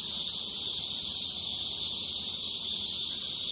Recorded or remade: recorded